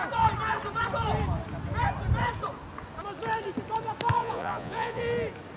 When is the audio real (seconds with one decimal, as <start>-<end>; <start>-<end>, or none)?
0.0-4.2; 5.0-5.6